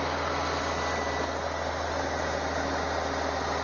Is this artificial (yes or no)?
no